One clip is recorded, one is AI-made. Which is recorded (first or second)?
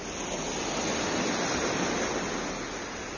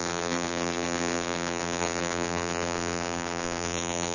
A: first